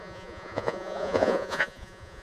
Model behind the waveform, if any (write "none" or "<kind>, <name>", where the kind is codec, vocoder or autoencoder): vocoder, Vocos